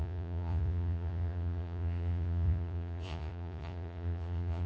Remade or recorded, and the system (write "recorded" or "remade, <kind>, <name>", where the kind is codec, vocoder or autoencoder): remade, vocoder, Vocos